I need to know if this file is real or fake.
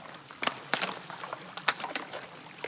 real